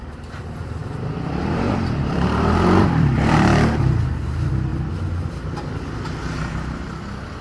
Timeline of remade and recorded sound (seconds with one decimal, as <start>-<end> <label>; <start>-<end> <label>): 0.0-4.7 remade; 4.7-6.5 recorded; 6.5-7.4 remade